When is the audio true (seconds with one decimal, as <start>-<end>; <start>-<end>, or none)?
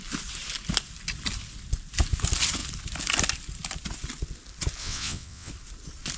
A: 0.0-4.8; 5.5-6.2